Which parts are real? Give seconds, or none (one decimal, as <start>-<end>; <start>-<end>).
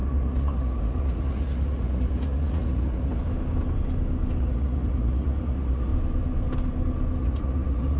3.2-4.4; 5.9-7.2